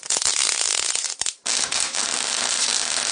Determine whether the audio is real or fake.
real